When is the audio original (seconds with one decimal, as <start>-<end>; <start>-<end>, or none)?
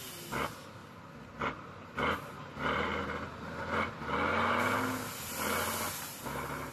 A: 0.0-0.8; 3.0-6.7